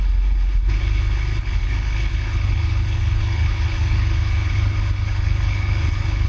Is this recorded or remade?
remade